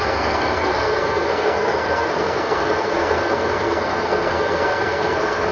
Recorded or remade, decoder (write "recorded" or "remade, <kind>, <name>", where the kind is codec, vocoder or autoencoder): remade, codec, SNAC